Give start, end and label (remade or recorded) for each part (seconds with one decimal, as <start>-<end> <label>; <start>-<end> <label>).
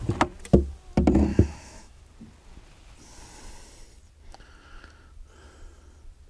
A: 0.0-1.3 recorded; 1.3-2.0 remade; 2.0-6.3 recorded